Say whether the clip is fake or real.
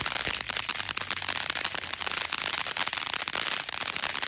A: real